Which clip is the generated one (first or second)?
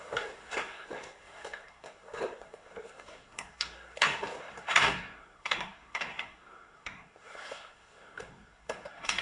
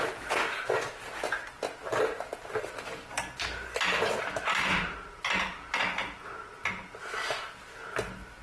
first